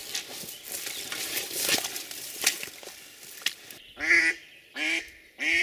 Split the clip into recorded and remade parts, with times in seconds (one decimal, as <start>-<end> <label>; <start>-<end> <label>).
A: 0.0-5.6 recorded